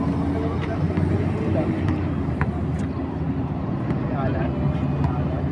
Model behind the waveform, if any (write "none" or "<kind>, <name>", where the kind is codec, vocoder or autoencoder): none